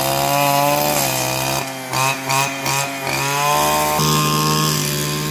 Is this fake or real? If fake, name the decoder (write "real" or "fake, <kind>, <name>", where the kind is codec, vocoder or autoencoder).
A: real